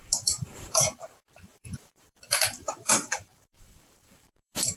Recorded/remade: remade